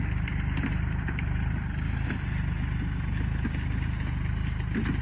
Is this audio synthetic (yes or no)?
no